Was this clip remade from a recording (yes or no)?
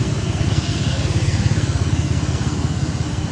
yes